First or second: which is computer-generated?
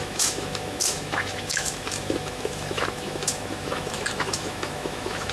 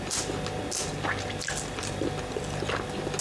first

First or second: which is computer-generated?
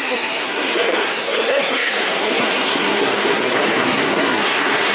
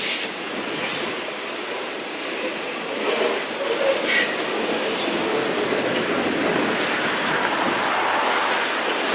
first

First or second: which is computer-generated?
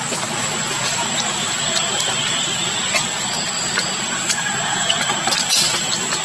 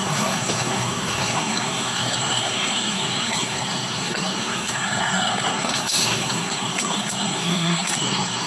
second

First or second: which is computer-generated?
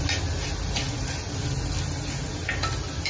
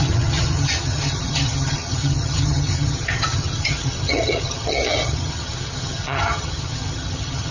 second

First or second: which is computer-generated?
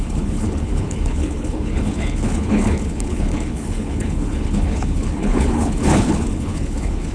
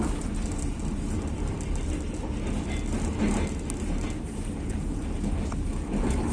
first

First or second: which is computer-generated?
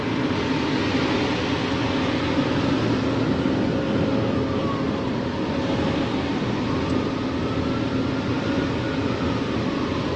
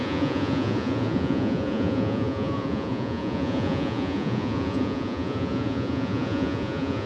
second